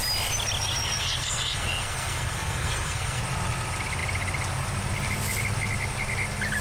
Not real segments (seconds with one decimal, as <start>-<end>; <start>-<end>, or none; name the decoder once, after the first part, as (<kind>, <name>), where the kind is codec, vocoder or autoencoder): 0.8-3.2 (codec, SNAC)